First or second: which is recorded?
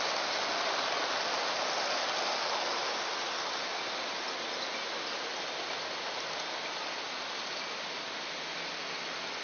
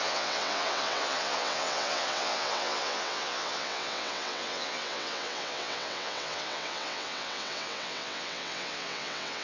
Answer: first